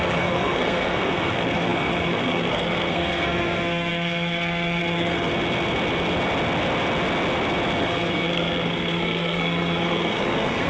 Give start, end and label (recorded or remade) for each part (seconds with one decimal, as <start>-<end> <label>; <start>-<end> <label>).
0.0-5.3 remade; 5.3-7.8 recorded; 7.8-10.7 remade